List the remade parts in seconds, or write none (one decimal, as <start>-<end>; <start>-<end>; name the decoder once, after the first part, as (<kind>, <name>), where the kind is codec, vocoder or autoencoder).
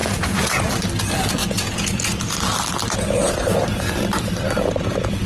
0.0-0.6 (vocoder, Vocos); 1.4-2.2